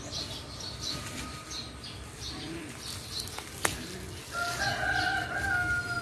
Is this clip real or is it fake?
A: real